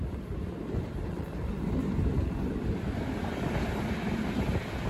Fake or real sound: real